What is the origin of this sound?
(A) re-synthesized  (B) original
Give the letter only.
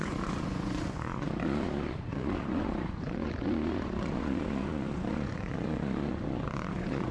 A